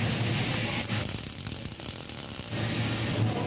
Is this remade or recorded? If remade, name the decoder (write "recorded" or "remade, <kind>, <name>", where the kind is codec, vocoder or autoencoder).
recorded